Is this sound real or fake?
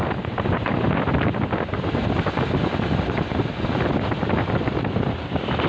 real